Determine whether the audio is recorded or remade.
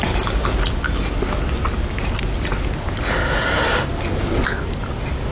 recorded